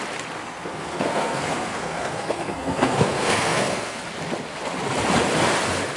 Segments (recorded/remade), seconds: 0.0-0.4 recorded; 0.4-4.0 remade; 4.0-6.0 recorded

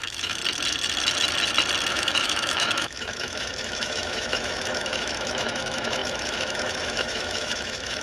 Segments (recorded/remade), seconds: 0.0-0.4 remade; 0.4-1.9 recorded; 1.9-8.0 remade

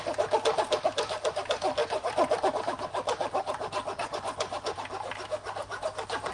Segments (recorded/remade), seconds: 0.0-4.0 recorded; 4.0-4.8 remade; 4.8-6.3 recorded

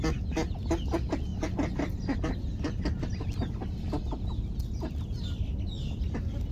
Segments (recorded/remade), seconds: 0.0-6.5 recorded